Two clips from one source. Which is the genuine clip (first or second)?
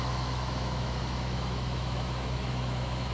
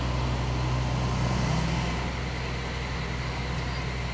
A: second